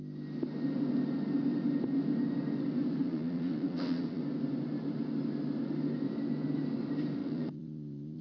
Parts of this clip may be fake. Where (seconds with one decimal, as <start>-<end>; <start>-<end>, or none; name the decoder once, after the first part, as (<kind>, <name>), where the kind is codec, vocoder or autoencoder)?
3.0-4.2 (vocoder, Vocos); 7.2-8.2